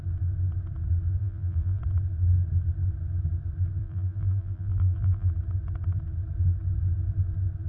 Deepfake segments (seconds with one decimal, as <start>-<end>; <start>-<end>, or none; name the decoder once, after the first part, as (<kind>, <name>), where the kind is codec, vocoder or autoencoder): 1.2-1.8 (vocoder, BigVGAN v2); 3.8-5.3